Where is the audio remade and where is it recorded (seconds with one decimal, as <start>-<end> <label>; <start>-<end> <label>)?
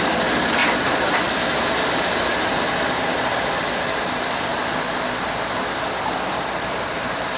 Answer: 0.0-0.6 remade; 0.6-1.6 recorded; 1.6-4.5 remade; 4.5-5.2 recorded; 5.2-7.4 remade